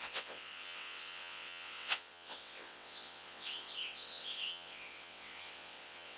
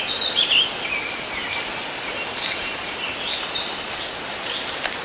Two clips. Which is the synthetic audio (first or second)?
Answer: first